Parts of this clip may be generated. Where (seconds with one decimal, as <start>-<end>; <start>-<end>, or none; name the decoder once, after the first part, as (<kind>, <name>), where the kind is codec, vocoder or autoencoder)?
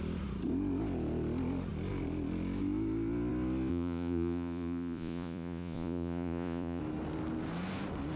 3.7-6.8 (vocoder, Vocos)